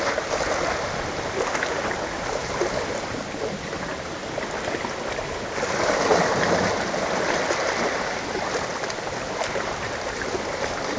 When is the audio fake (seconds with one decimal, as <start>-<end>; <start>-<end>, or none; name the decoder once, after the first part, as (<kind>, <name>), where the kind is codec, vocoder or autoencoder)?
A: none